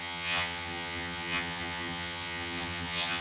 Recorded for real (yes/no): no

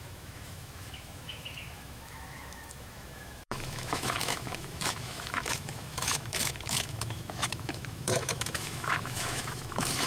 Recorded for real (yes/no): no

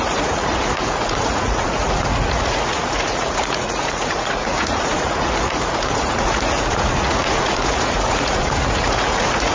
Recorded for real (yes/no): no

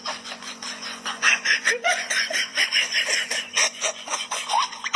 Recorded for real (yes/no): no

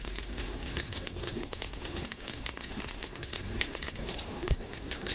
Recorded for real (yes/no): no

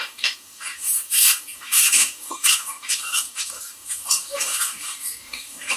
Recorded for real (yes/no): no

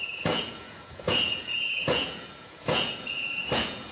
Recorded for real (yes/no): no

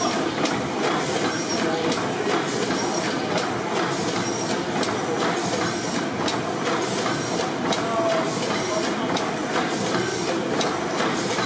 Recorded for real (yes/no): yes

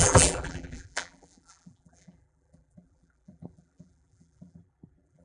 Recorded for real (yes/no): no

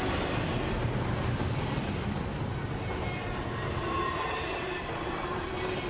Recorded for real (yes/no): yes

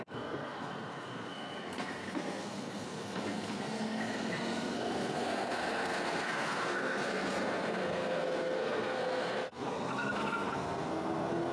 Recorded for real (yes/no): no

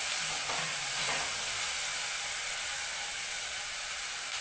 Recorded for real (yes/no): yes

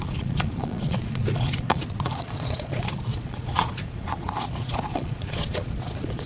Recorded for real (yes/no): no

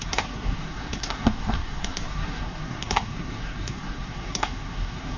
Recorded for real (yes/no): no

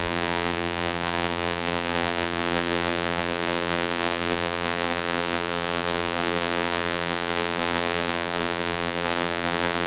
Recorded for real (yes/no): no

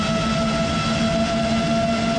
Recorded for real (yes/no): yes